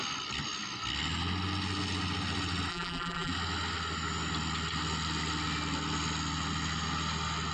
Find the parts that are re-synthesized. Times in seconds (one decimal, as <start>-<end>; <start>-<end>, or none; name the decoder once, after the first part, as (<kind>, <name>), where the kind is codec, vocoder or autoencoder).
2.7-3.3 (vocoder, BigVGAN v2)